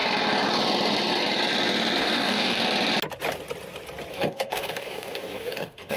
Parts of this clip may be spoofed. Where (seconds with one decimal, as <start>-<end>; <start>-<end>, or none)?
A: 2.0-2.6; 4.1-6.0